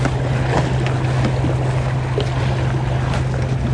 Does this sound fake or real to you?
real